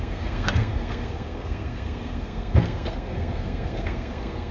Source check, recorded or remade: remade